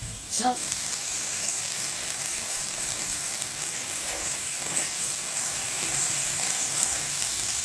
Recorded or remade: remade